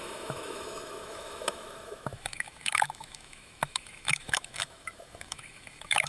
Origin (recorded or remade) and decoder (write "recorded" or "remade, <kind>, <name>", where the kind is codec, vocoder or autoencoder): remade, autoencoder, DAC-VAE